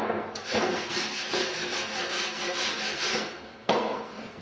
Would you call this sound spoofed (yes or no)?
yes